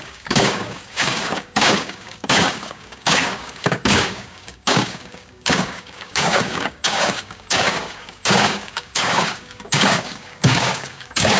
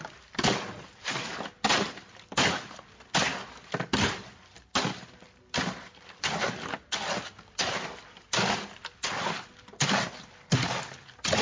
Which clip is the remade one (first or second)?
first